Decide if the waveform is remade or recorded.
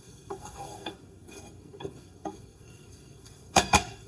remade